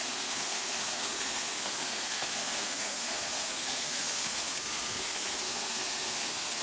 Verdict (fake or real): fake